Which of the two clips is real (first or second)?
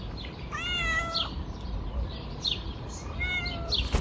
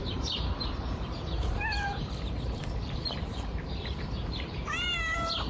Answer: first